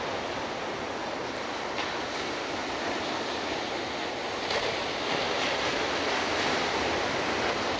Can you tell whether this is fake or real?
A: real